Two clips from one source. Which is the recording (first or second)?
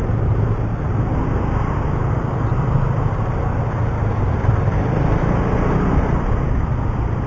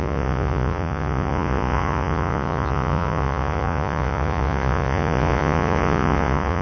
first